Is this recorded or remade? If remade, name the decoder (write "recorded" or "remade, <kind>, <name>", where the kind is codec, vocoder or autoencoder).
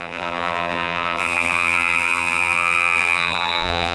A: remade, vocoder, BigVGAN v2